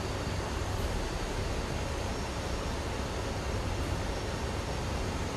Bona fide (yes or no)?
yes